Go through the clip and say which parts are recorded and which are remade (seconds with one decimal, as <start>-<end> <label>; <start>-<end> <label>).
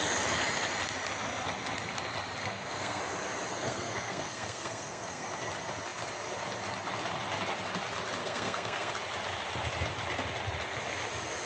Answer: 0.0-2.4 recorded; 2.4-3.0 remade; 3.0-3.5 recorded; 3.5-5.3 remade; 5.3-8.2 recorded; 8.2-8.9 remade; 8.9-11.5 recorded